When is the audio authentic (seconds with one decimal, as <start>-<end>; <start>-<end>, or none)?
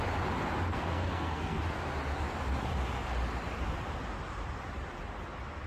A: 0.0-0.7; 1.6-5.7